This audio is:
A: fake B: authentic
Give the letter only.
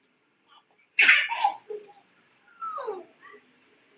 A